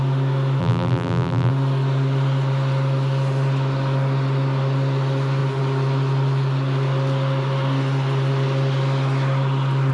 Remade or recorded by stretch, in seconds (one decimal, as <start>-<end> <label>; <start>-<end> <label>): 0.0-0.6 recorded; 0.6-1.5 remade; 1.5-9.9 recorded